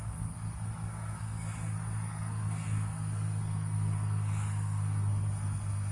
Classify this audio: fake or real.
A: fake